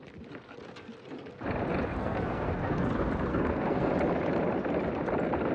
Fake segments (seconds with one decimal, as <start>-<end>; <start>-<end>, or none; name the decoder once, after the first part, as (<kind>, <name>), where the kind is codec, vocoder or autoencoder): 2.0-2.9 (codec, SNAC); 3.3-3.9